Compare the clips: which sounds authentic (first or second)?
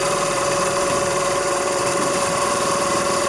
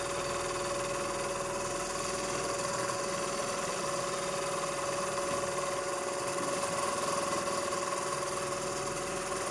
second